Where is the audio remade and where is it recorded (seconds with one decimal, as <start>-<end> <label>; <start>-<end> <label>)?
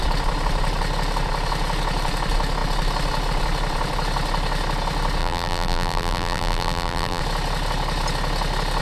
0.0-5.2 recorded; 5.2-7.2 remade; 7.2-8.8 recorded